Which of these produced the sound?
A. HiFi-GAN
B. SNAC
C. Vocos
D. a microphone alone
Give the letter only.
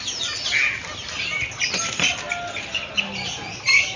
D